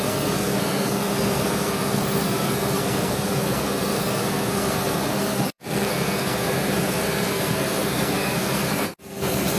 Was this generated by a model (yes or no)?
yes